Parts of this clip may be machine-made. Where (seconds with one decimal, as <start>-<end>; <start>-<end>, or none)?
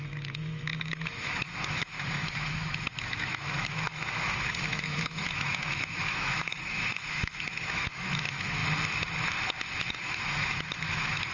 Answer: 0.0-8.6; 9.9-11.3